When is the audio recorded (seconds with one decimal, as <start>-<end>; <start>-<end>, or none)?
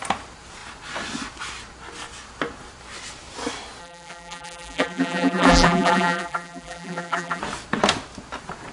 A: 0.0-3.8; 7.4-8.7